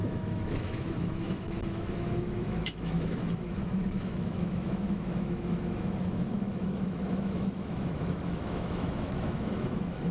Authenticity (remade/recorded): remade